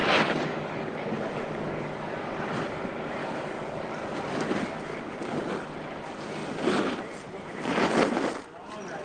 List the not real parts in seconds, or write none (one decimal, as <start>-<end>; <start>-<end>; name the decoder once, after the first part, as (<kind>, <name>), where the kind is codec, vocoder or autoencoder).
0.0-2.1 (codec, DAC); 3.2-3.9; 4.9-5.5